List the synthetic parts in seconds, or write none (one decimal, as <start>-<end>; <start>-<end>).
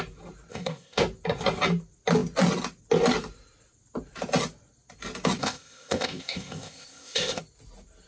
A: 0.5-1.0; 5.4-7.4